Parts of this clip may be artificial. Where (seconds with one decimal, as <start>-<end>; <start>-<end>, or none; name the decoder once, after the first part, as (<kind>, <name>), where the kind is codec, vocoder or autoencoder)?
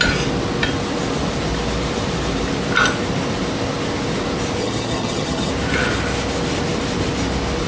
4.6-5.5 (vocoder, HiFi-GAN)